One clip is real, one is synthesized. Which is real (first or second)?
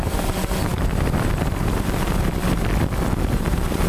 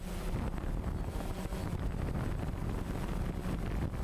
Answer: second